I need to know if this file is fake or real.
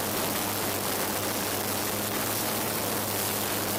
real